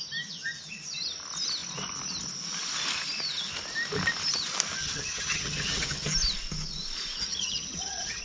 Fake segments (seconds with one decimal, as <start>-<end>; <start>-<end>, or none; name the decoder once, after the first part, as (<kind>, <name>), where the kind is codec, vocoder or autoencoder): 4.8-6.1 (vocoder, HiFi-GAN); 7.2-8.2